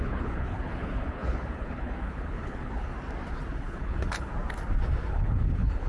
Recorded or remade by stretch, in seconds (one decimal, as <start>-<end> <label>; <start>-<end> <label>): 0.0-2.9 remade; 2.9-3.6 recorded; 3.6-4.3 remade; 4.3-5.1 recorded; 5.1-5.9 remade